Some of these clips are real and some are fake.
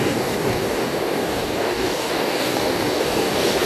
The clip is fake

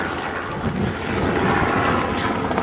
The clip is real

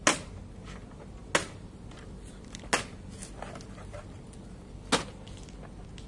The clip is real